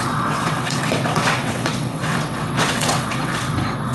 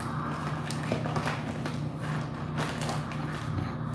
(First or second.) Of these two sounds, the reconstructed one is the first